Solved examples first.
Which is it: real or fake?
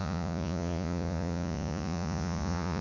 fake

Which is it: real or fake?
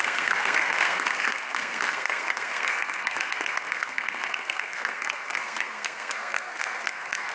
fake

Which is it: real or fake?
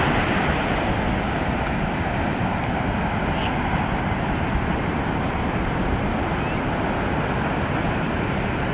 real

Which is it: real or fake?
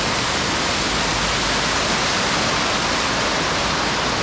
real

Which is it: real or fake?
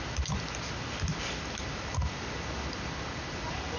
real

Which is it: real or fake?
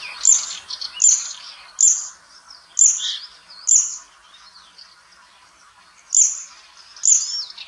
real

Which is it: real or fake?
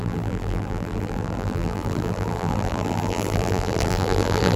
fake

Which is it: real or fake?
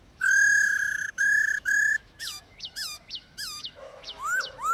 fake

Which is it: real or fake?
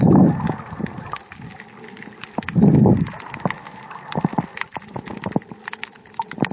real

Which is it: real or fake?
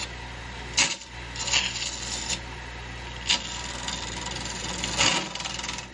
real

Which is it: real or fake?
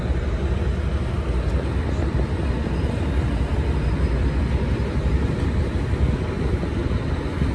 real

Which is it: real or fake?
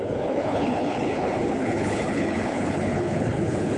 fake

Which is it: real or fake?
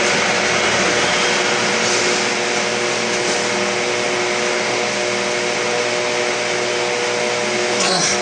real